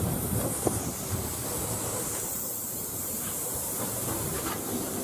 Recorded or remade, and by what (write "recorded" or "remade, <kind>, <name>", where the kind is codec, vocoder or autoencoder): remade, vocoder, BigVGAN v2